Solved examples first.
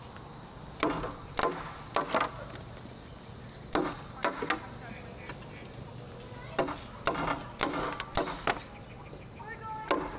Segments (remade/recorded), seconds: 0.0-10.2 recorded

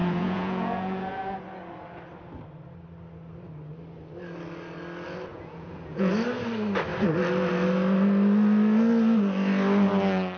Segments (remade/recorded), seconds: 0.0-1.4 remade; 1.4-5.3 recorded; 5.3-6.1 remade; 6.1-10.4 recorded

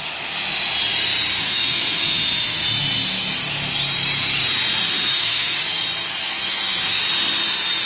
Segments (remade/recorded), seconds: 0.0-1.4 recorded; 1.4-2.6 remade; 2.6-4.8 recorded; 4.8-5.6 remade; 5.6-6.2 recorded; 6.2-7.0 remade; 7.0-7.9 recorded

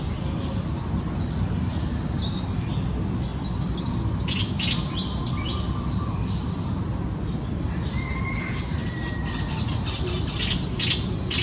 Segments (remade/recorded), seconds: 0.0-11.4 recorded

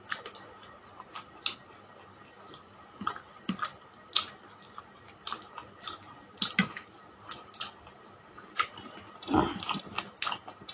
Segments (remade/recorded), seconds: 0.0-10.7 recorded

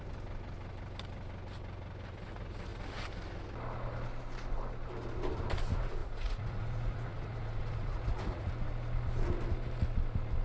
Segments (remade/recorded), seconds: 0.0-6.0 recorded; 6.0-8.5 remade; 8.5-10.4 recorded

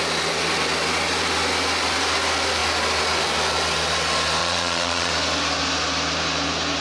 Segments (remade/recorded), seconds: 0.0-4.4 recorded; 4.4-5.1 remade; 5.1-6.8 recorded

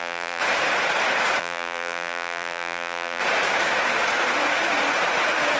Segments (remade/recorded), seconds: 0.0-0.4 remade; 0.4-1.4 recorded; 1.4-3.2 remade; 3.2-5.6 recorded